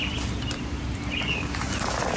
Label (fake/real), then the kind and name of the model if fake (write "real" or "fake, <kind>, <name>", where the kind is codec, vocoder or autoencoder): fake, vocoder, BigVGAN v2